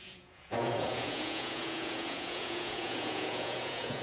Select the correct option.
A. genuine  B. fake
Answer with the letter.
B